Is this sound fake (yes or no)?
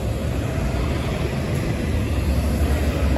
no